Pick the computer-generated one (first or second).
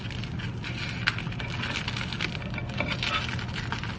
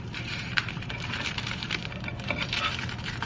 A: second